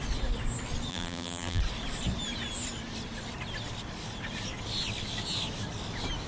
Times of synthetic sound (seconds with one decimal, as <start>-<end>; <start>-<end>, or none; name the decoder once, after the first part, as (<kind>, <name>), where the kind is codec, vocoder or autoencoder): 0.9-1.6 (vocoder, BigVGAN v2)